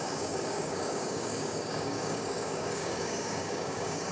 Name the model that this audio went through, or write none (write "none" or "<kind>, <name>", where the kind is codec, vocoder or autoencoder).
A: codec, DAC